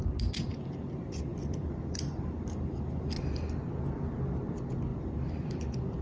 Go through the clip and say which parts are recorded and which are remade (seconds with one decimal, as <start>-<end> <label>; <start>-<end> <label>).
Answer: 0.0-1.3 recorded; 1.3-3.5 remade; 3.5-4.9 recorded; 4.9-6.0 remade